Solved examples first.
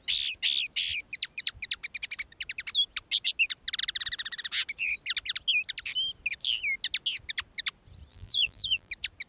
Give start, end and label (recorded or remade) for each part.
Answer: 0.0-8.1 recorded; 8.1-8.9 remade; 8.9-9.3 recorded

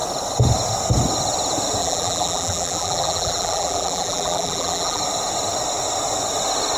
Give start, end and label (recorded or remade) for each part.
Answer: 0.0-1.8 recorded; 1.8-5.0 remade; 5.0-6.8 recorded